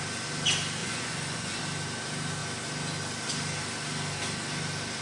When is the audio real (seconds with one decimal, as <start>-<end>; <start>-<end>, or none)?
0.0-0.8; 1.6-5.0